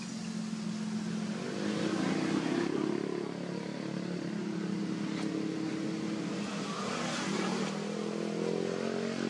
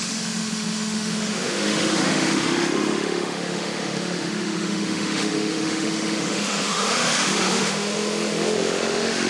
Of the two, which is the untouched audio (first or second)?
first